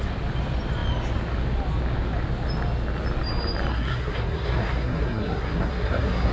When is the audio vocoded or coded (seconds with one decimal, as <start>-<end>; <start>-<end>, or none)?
3.7-6.3